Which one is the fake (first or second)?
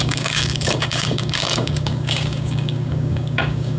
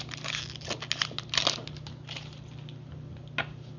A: first